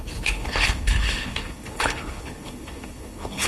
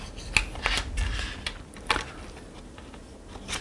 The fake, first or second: first